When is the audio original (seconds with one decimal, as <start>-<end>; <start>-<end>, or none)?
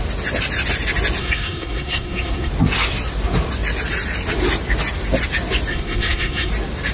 0.0-1.2; 2.5-5.7; 6.5-6.9